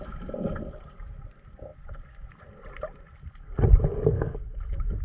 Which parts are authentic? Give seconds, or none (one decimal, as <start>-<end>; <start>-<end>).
0.0-5.0